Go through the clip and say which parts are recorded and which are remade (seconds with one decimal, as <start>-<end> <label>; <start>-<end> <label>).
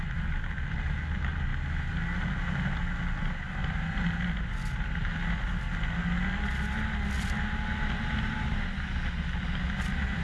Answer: 0.0-10.2 recorded